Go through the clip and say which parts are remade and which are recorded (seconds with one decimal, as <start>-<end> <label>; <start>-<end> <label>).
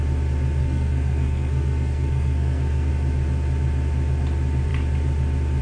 0.0-0.6 recorded; 0.6-2.9 remade; 2.9-5.6 recorded